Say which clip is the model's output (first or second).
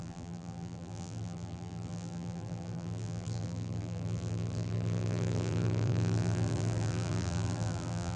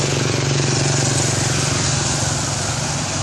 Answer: first